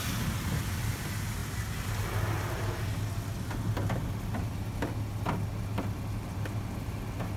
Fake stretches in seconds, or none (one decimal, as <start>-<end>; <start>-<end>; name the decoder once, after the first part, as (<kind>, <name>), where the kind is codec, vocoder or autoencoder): none